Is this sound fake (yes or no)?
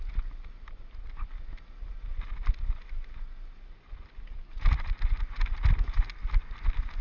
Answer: no